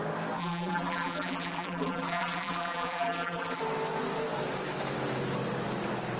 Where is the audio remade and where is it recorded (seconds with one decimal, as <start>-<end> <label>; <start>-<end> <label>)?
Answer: 0.0-0.4 recorded; 0.4-3.6 remade; 3.6-6.2 recorded

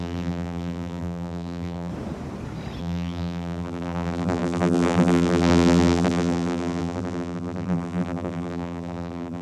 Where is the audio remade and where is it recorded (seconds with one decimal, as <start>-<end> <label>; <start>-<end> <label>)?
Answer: 0.0-1.9 remade; 1.9-2.8 recorded; 2.8-9.4 remade

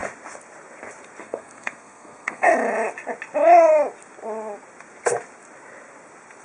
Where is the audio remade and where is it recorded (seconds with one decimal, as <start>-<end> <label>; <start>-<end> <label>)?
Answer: 0.0-1.2 recorded; 1.2-2.5 remade; 2.5-6.4 recorded